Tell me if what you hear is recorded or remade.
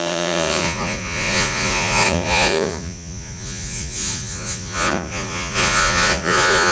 remade